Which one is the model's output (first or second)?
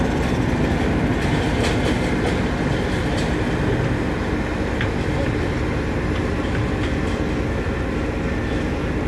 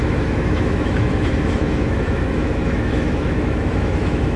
second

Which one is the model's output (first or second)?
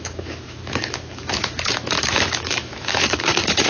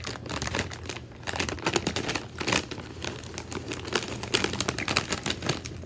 first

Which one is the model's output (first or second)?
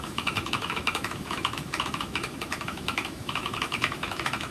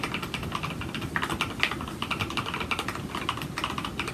first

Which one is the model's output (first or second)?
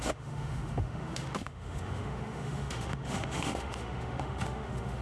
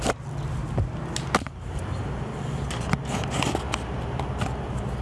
first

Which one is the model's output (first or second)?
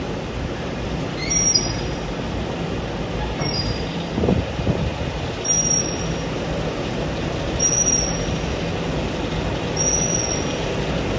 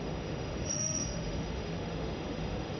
second